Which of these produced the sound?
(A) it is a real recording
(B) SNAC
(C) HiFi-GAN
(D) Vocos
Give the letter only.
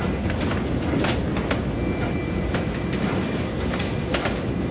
A